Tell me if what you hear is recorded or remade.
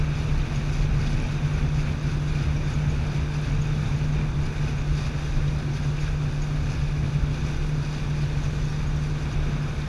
recorded